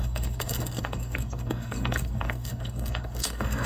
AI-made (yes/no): yes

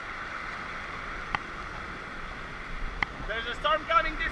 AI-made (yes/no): no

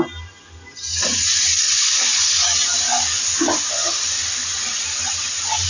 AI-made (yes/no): no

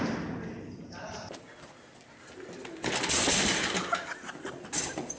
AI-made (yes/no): no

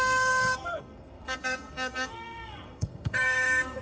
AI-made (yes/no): yes